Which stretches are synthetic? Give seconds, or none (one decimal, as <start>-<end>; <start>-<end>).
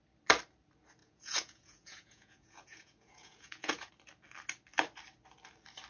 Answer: 1.0-3.9